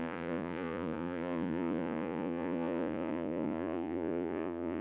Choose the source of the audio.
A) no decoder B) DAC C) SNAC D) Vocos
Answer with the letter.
D